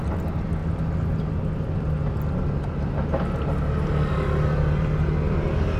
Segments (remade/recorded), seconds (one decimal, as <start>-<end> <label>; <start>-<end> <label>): 0.0-5.8 recorded

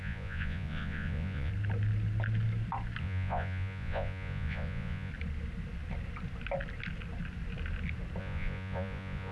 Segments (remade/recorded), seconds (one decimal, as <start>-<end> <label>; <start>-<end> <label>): 0.0-1.5 remade; 1.5-3.0 recorded; 3.0-5.1 remade; 5.1-8.2 recorded; 8.2-9.3 remade

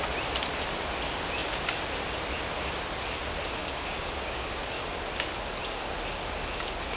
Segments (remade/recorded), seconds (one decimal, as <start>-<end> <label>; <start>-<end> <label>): 0.0-3.6 recorded; 3.6-4.7 remade; 4.7-7.0 recorded

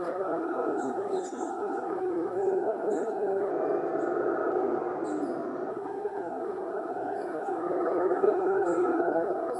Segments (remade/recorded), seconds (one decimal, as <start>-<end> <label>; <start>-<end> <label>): 0.0-3.5 remade; 3.5-5.7 recorded; 5.7-9.6 remade

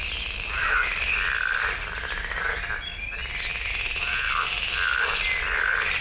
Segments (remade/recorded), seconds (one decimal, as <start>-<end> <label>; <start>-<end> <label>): 0.0-1.0 remade; 1.0-6.0 recorded

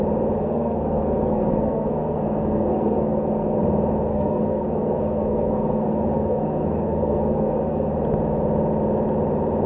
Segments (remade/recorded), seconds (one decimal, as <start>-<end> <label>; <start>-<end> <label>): 0.0-0.4 recorded; 0.4-3.6 remade; 3.6-4.1 recorded; 4.1-7.9 remade; 7.9-9.7 recorded